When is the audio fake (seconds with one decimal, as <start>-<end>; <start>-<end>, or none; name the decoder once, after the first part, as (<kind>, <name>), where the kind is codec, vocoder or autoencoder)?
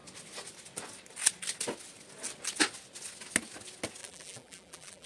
4.0-5.1 (vocoder, BigVGAN v2)